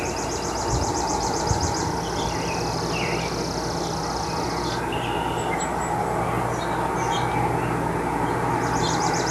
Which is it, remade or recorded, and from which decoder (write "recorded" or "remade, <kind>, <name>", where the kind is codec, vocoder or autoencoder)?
recorded